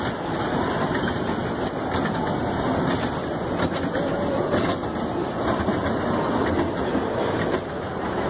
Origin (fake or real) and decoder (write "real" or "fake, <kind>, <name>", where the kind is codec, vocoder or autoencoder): real